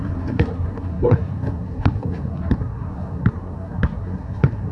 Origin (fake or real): fake